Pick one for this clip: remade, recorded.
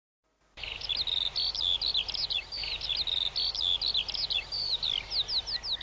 recorded